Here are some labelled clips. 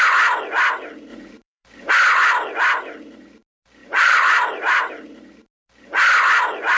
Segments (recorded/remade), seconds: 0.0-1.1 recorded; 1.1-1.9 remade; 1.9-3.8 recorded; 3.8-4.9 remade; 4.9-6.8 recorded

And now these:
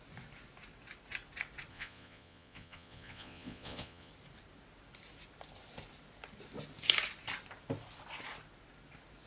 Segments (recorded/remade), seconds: 0.0-1.7 recorded; 1.7-4.1 remade; 4.1-9.3 recorded

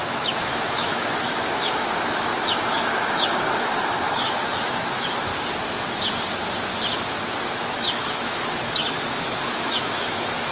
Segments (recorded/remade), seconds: 0.0-5.3 remade; 5.3-7.6 recorded; 7.6-10.5 remade

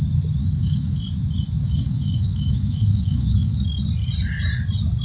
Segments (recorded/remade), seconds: 0.0-0.4 recorded; 0.4-1.0 remade; 1.0-1.6 recorded; 1.6-3.6 remade; 3.6-5.0 recorded

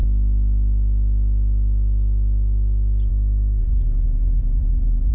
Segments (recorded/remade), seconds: 0.0-3.6 recorded; 3.6-5.1 remade

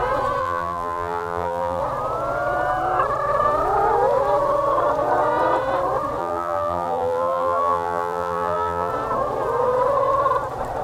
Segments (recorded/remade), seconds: 0.0-0.4 recorded; 0.4-1.8 remade; 1.8-6.2 recorded; 6.2-8.9 remade; 8.9-10.8 recorded